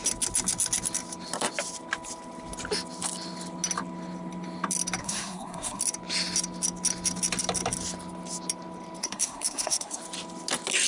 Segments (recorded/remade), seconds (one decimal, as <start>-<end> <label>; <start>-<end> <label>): 0.0-5.0 recorded; 5.0-5.8 remade; 5.8-9.0 recorded; 9.0-10.0 remade; 10.0-10.9 recorded